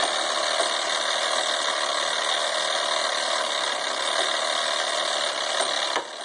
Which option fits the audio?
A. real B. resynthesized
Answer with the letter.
A